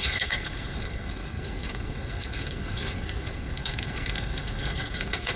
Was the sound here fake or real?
fake